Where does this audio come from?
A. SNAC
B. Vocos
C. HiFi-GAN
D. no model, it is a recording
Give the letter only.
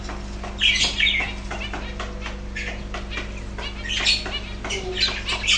D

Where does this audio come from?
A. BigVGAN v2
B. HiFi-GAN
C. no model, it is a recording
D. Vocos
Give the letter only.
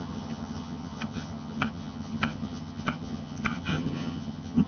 B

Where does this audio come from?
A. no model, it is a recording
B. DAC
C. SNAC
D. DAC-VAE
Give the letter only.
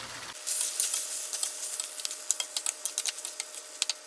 A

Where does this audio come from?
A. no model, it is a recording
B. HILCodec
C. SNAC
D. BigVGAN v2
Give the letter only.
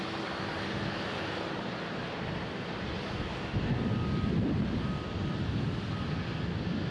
A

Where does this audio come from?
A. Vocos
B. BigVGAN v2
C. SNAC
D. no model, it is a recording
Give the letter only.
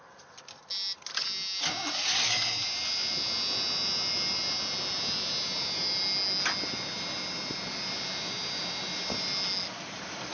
D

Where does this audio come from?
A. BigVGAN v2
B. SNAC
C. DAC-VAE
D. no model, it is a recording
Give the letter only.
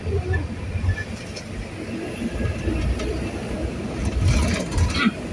D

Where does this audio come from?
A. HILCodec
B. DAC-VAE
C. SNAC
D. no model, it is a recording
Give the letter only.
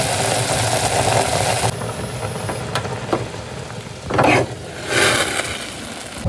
D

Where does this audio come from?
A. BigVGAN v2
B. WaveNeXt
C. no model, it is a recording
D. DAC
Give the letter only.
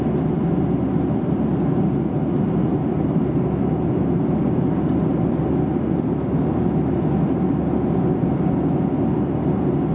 C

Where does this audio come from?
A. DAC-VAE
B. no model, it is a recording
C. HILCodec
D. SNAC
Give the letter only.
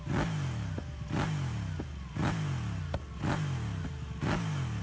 B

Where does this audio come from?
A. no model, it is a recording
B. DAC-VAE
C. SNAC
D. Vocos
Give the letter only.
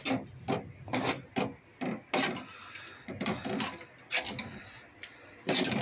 A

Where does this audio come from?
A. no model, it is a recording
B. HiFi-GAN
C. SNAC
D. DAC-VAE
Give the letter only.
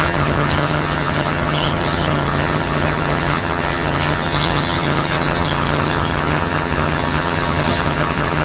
B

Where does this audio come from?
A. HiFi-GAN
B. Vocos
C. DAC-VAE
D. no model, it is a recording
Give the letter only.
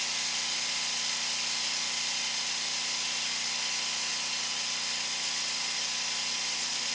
D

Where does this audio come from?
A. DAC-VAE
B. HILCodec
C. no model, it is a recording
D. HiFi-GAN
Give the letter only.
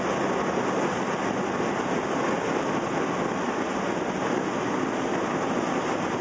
C